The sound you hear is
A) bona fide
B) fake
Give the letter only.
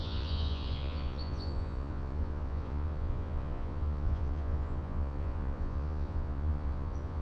B